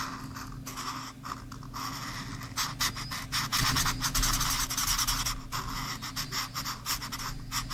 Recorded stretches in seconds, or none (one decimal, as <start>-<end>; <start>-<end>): 0.0-7.7